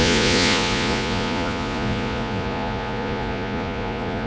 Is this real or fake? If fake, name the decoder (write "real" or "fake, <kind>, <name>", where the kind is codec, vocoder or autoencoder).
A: fake, vocoder, Vocos